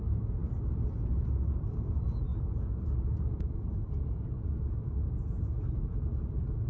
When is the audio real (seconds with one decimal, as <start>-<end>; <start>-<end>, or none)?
0.0-2.3; 6.3-6.7